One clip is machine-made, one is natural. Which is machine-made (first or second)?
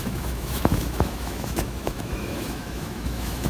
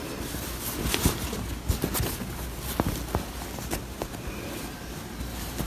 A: first